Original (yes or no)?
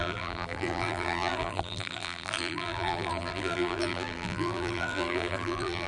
no